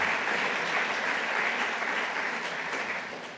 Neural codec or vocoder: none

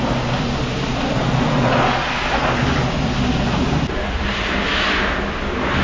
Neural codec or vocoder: none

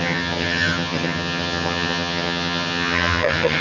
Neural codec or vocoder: vocoder, HiFi-GAN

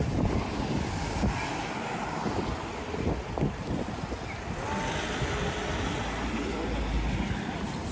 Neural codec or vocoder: none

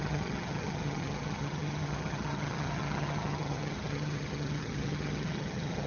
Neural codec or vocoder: vocoder, HiFi-GAN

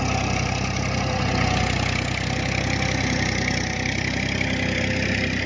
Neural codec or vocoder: none